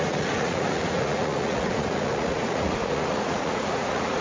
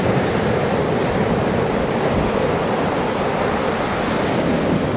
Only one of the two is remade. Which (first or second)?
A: first